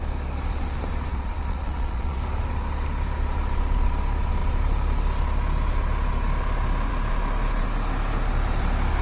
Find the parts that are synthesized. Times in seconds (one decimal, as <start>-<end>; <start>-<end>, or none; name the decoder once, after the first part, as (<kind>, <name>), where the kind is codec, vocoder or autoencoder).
1.1-2.2 (vocoder, Vocos)